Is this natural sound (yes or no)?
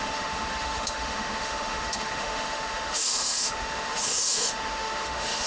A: no